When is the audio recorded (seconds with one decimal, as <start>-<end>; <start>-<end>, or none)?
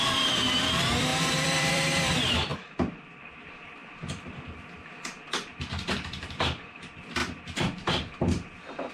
2.5-3.2; 3.8-5.5